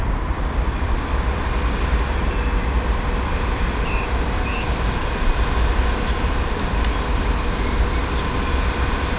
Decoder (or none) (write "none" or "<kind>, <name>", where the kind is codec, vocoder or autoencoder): vocoder, BigVGAN v2